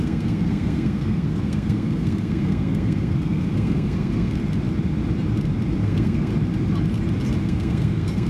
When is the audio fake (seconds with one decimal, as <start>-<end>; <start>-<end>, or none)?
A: 0.0-4.4; 5.8-6.3; 7.4-8.3